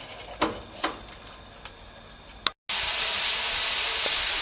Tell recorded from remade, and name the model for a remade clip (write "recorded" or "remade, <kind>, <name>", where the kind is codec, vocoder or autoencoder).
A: recorded